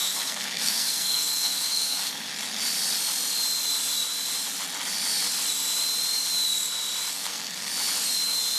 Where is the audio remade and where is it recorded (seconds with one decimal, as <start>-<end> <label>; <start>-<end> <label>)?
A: 0.0-2.3 remade; 2.3-7.1 recorded; 7.1-7.7 remade; 7.7-8.6 recorded